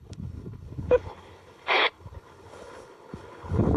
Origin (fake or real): fake